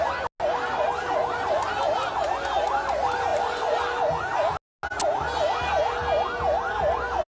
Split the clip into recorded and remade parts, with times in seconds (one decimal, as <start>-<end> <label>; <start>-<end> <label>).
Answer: 0.0-7.4 recorded